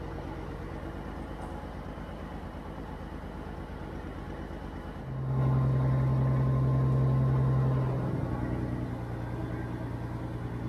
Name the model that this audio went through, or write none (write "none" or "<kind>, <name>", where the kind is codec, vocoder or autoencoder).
none